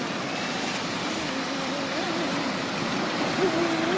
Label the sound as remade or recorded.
recorded